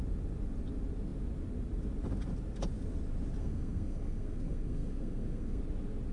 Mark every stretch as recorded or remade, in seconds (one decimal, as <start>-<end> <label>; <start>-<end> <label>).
0.0-3.4 recorded; 3.4-5.6 remade; 5.6-6.1 recorded